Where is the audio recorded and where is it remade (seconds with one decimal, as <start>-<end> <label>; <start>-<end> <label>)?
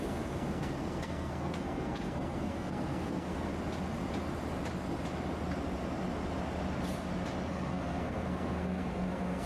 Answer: 0.0-3.5 remade; 3.5-7.5 recorded; 7.5-9.5 remade